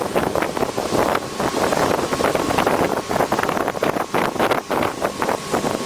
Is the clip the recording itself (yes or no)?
yes